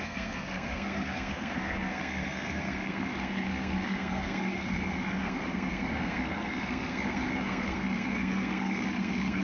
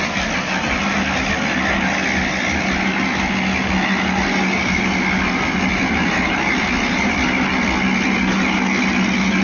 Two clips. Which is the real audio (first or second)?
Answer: second